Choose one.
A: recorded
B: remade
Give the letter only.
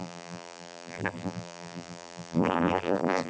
B